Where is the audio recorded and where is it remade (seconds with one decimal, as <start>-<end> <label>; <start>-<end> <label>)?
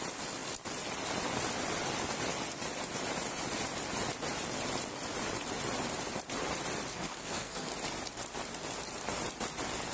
0.0-6.9 recorded; 6.9-7.7 remade; 7.7-9.9 recorded